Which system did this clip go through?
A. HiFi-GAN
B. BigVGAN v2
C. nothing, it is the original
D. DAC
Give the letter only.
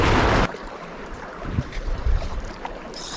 B